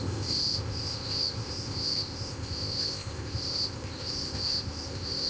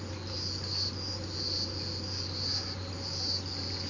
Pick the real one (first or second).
second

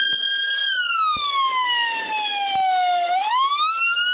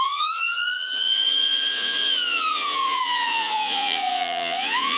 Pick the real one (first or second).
first